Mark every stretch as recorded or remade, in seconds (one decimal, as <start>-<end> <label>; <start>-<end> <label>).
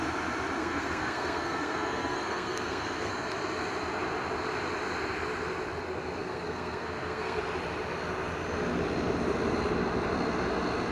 0.0-0.6 recorded; 0.6-3.1 remade; 3.1-6.2 recorded; 6.2-7.4 remade; 7.4-10.9 recorded